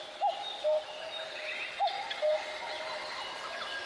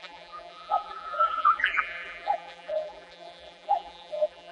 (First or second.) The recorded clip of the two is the first